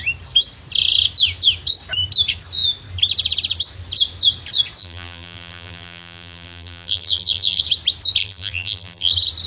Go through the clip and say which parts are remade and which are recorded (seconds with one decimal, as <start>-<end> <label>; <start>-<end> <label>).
0.0-4.8 recorded; 4.8-7.6 remade; 7.6-8.2 recorded; 8.2-9.1 remade; 9.1-9.5 recorded